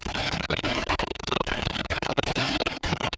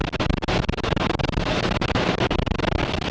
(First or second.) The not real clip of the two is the first